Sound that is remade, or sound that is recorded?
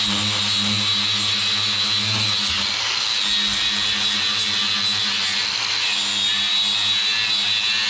recorded